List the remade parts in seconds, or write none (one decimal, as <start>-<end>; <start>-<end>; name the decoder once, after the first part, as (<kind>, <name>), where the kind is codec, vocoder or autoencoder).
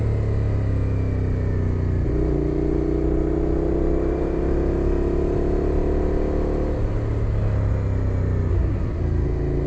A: 8.5-9.0 (codec, SNAC)